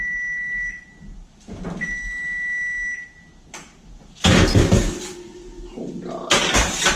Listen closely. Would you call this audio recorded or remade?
recorded